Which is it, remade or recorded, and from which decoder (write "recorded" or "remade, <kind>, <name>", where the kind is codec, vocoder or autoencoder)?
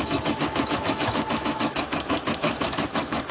remade, autoencoder, DAC-VAE